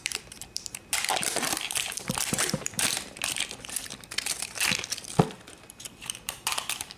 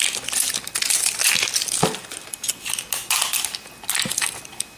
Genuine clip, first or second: second